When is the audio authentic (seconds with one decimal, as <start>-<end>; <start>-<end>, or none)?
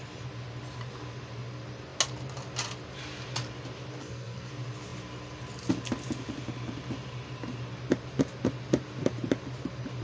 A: 0.0-4.0; 4.5-10.0